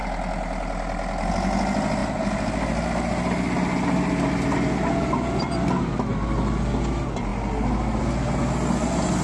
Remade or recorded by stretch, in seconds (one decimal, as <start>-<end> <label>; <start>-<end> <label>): 0.0-9.2 recorded